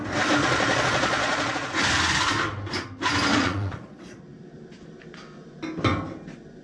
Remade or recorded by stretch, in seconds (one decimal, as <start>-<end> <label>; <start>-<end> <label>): 0.0-0.4 recorded; 0.4-1.7 remade; 1.7-3.3 recorded; 3.3-4.2 remade; 4.2-6.6 recorded